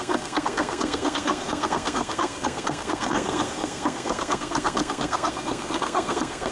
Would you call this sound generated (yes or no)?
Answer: yes